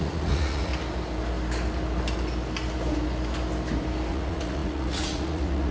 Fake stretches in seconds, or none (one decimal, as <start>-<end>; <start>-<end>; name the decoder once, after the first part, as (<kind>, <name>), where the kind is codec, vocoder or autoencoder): 0.0-0.7 (vocoder, Vocos); 4.1-5.7